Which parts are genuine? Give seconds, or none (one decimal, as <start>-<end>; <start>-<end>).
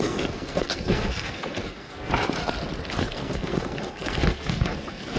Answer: 2.1-3.0